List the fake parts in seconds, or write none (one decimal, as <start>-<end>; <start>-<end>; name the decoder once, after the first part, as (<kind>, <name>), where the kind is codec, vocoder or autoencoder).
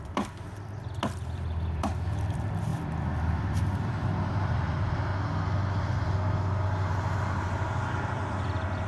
0.0-5.1 (vocoder, BigVGAN v2); 7.9-8.9